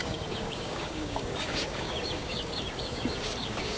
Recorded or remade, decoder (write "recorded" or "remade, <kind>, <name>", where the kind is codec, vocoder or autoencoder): remade, codec, DAC